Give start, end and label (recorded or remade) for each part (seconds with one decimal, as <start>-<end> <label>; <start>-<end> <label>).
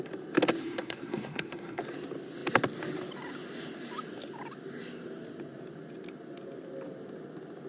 0.0-0.6 recorded; 0.6-1.8 remade; 1.8-7.7 recorded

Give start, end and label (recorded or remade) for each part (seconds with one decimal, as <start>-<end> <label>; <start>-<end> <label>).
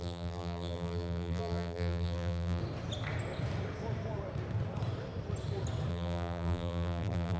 0.0-2.6 remade; 2.6-5.9 recorded; 5.9-7.4 remade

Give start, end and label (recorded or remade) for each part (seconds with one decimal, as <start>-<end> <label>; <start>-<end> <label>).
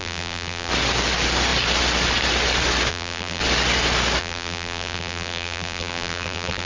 0.0-0.7 remade; 0.7-2.9 recorded; 2.9-3.4 remade; 3.4-4.2 recorded; 4.2-6.7 remade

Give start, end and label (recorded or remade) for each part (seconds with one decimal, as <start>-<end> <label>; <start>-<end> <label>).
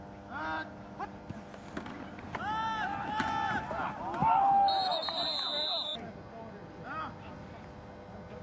0.0-8.4 recorded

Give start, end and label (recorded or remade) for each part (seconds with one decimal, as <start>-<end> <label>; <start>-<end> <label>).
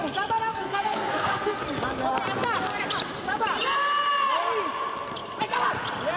0.0-0.5 recorded; 0.5-1.6 remade; 1.6-6.2 recorded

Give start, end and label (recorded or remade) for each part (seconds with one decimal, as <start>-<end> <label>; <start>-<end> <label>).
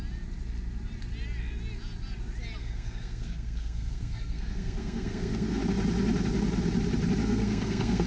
0.0-2.6 recorded; 2.6-5.6 remade; 5.6-7.2 recorded; 7.2-8.1 remade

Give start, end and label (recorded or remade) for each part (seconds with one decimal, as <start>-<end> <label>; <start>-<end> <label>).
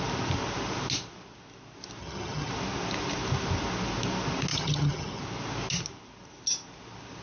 0.0-2.0 recorded; 2.0-2.5 remade; 2.5-4.5 recorded; 4.5-5.2 remade; 5.2-7.2 recorded